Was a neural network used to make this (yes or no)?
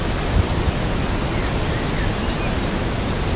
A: no